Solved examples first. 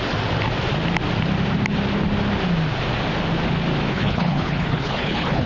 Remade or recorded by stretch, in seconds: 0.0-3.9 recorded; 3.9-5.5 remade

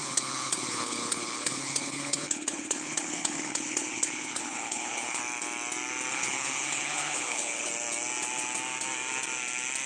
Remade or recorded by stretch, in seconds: 0.0-5.2 remade; 5.2-6.1 recorded; 6.1-7.7 remade; 7.7-9.9 recorded

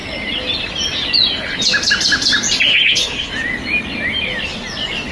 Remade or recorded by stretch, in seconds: 0.0-2.7 recorded; 2.7-3.3 remade; 3.3-5.1 recorded